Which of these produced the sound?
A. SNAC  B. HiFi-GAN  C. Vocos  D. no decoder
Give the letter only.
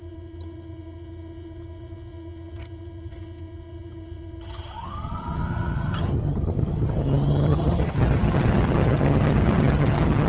B